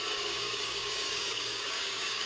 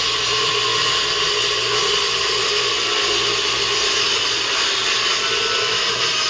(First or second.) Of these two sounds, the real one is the second